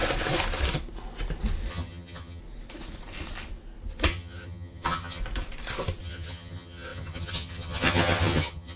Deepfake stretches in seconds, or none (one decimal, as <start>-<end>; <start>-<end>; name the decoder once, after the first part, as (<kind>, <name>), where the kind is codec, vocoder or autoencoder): 1.7-2.4 (vocoder, HiFi-GAN); 4.1-5.2; 6.0-8.8